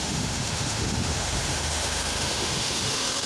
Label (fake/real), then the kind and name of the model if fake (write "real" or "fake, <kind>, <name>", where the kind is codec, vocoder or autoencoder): fake, autoencoder, DAC-VAE